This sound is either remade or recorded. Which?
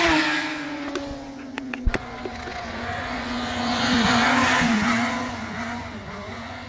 remade